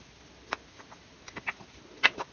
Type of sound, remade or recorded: recorded